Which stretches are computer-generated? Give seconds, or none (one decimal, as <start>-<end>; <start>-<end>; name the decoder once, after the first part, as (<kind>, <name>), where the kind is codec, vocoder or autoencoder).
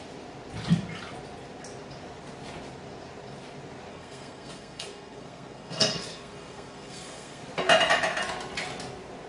3.9-7.4 (codec, SNAC)